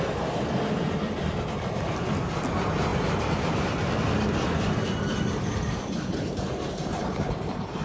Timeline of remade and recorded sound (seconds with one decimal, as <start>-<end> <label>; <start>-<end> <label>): 0.0-2.9 recorded; 2.9-7.8 remade